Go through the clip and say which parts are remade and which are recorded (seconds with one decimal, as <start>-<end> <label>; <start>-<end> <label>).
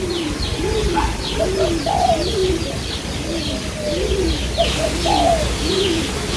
0.0-6.4 recorded